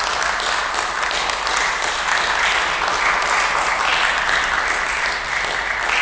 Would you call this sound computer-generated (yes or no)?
no